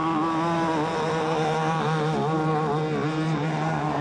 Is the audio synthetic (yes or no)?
no